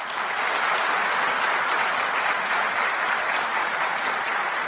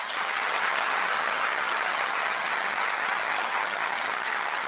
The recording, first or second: first